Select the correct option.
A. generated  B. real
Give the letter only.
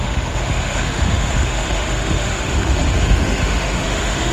A